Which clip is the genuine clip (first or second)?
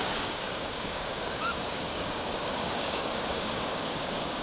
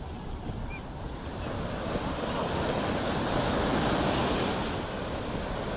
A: second